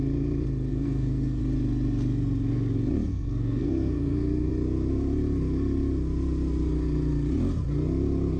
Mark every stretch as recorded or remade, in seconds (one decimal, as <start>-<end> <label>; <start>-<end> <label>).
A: 0.0-0.7 recorded; 0.7-1.4 remade; 1.4-3.1 recorded; 3.1-4.5 remade; 4.5-8.4 recorded